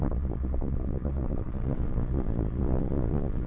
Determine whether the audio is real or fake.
fake